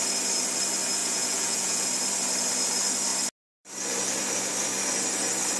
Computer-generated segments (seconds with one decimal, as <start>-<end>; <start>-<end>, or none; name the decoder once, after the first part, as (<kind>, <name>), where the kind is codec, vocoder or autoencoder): 1.0-1.9 (vocoder, Vocos)